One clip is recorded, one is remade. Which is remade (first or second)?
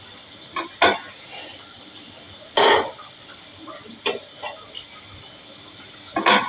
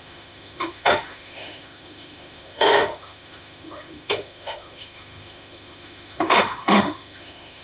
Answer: second